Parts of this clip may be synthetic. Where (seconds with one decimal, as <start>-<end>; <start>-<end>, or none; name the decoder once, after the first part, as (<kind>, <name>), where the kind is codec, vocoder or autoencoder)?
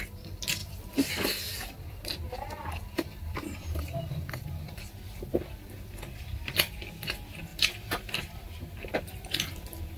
0.6-4.8 (vocoder, BigVGAN v2); 7.5-10.0